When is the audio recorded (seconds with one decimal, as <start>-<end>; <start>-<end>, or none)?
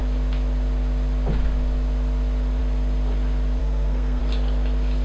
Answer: 0.0-3.6; 4.2-5.0